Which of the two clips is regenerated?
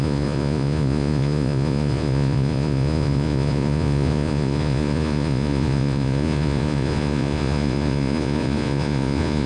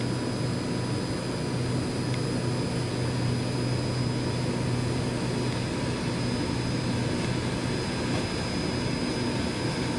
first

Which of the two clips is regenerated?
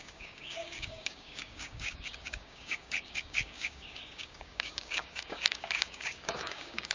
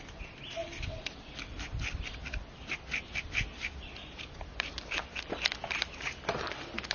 first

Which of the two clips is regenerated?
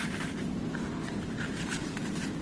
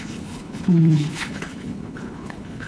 second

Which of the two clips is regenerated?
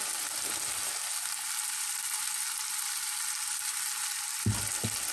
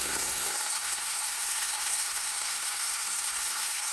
second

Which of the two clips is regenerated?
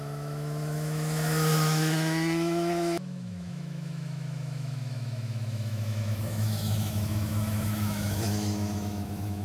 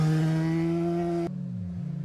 first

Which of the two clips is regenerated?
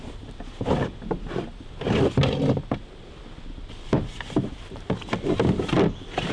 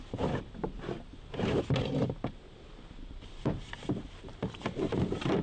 second